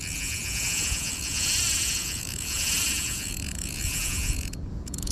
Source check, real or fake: fake